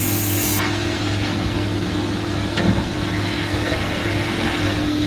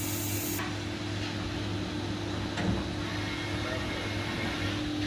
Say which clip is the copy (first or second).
first